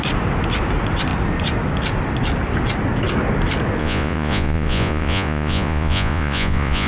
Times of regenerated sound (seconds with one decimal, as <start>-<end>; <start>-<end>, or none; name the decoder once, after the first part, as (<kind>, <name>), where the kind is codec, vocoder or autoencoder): 3.8-6.9 (vocoder, Vocos)